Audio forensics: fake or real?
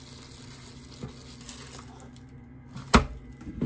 real